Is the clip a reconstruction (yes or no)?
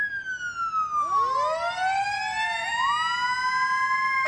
no